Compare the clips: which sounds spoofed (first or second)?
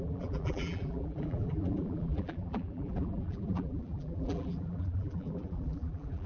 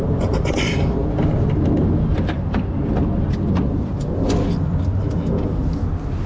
first